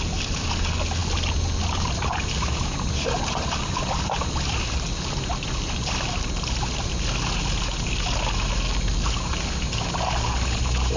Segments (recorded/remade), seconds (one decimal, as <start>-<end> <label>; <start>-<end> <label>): 0.0-11.0 recorded